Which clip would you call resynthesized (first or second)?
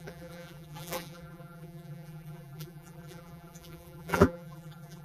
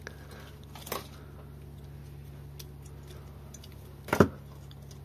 first